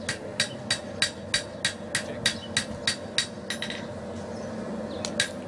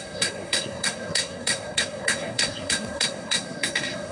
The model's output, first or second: second